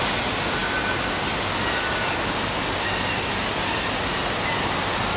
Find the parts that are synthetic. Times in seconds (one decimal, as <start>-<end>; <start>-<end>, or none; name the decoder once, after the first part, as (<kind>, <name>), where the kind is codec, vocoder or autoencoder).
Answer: none